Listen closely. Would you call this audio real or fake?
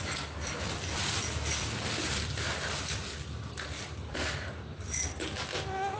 real